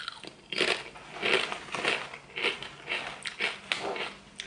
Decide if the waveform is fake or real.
real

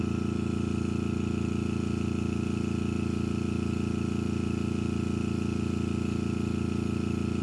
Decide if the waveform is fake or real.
real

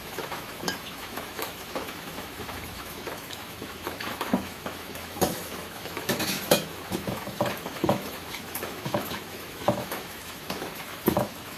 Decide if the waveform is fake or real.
fake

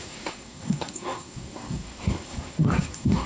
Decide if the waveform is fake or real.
fake